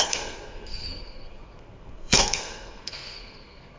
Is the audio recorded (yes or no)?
no